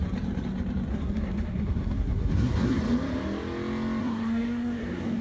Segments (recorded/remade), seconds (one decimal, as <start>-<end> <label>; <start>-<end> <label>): 0.0-0.9 recorded; 0.9-2.8 remade; 2.8-4.0 recorded; 4.0-5.2 remade